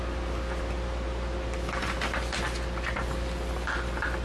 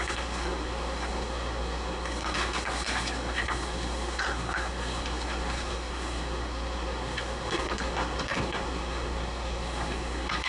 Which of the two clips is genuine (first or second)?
first